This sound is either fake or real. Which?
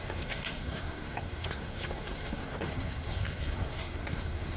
fake